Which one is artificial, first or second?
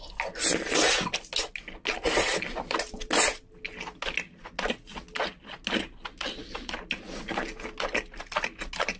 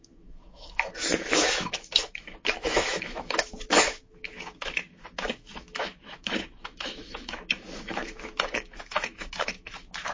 second